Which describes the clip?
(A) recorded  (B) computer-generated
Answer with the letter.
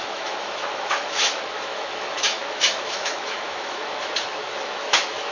B